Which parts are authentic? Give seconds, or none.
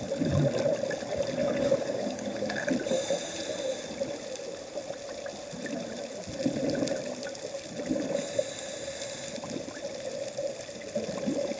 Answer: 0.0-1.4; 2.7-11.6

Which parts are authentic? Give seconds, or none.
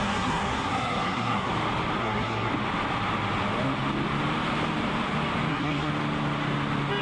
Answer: 1.5-2.0; 2.5-5.5; 5.9-7.0